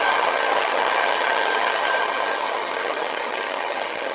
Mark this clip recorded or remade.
remade